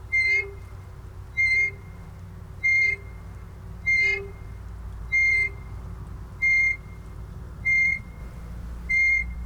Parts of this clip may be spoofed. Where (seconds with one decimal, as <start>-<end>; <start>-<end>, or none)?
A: 0.0-0.6; 5.0-5.4; 7.1-8.2; 8.9-9.5